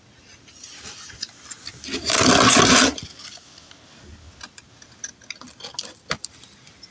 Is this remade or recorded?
recorded